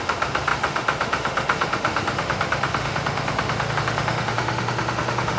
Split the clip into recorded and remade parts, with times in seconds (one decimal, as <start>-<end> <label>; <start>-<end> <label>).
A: 0.0-5.4 remade